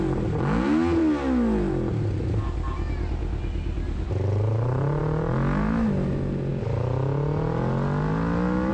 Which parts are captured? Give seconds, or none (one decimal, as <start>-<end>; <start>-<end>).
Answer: 0.0-8.7